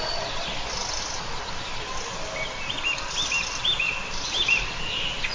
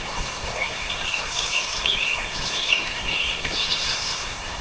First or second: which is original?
first